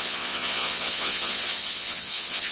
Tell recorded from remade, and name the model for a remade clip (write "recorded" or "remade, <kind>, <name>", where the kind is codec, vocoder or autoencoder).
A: remade, vocoder, Vocos